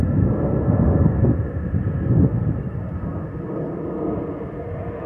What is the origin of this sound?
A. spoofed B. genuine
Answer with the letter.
B